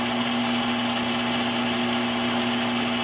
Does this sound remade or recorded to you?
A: recorded